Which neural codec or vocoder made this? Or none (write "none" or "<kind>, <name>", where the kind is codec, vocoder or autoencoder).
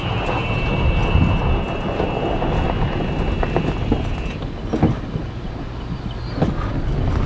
none